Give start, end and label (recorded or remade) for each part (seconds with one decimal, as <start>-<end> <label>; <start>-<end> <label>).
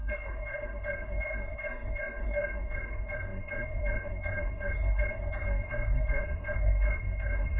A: 0.0-7.6 remade